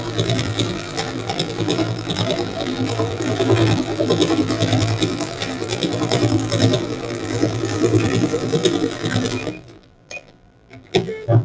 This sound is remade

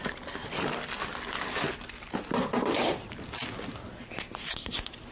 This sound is recorded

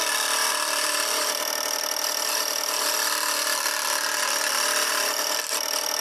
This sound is remade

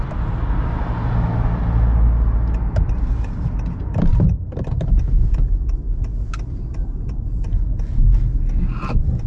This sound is recorded